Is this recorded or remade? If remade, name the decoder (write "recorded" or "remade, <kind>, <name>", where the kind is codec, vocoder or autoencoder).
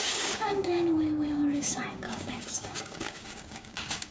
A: remade, codec, DAC